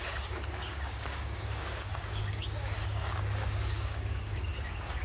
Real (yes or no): no